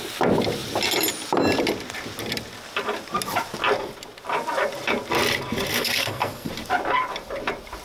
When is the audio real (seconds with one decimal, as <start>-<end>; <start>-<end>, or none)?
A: 0.0-5.7; 6.5-7.8